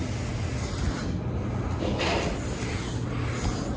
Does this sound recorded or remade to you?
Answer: recorded